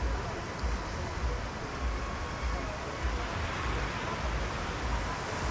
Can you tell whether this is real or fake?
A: real